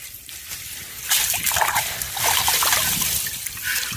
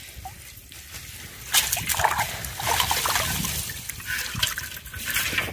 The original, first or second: second